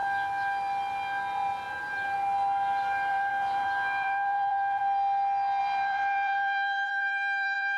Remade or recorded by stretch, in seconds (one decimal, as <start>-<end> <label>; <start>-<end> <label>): 0.0-3.1 recorded; 3.1-4.8 remade; 4.8-5.6 recorded; 5.6-7.8 remade